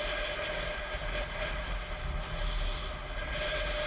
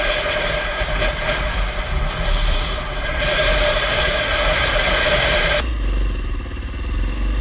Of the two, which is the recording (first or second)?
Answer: first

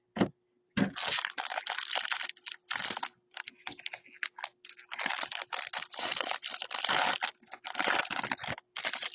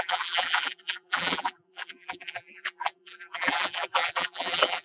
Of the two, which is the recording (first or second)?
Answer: first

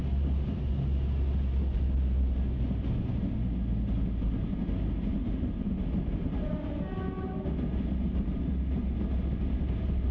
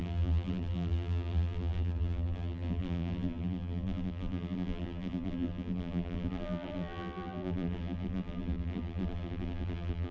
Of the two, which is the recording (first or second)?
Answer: first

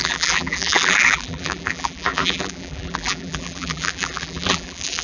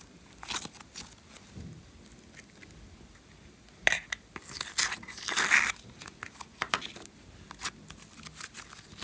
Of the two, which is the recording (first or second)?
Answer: second